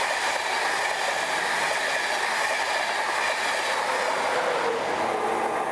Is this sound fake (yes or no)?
no